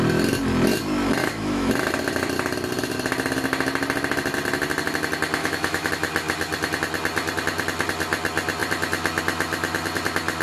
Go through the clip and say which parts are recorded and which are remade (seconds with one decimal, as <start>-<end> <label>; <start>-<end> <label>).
0.0-1.2 recorded; 1.2-1.7 remade; 1.7-5.4 recorded; 5.4-5.9 remade; 5.9-10.4 recorded